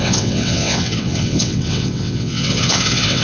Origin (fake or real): fake